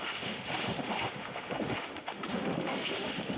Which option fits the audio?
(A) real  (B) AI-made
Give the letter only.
B